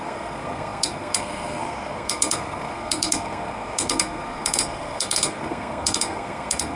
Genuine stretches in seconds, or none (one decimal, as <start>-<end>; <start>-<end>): none